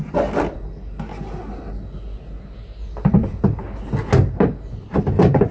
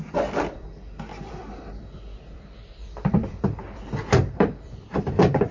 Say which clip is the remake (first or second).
second